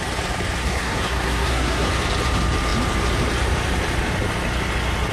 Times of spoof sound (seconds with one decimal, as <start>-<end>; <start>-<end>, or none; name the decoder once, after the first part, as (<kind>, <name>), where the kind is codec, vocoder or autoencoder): 0.6-1.9 (codec, SNAC)